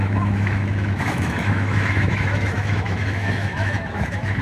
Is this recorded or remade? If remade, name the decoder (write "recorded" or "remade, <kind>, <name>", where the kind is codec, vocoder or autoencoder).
remade, autoencoder, DAC-VAE